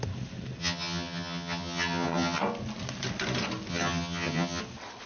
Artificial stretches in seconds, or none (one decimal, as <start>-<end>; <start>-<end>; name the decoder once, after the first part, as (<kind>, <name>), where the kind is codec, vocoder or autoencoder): 0.6-2.4 (vocoder, HiFi-GAN); 3.7-4.6